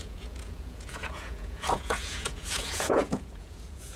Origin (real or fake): fake